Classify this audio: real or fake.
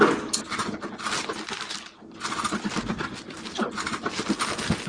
real